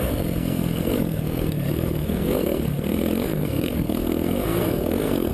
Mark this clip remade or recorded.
remade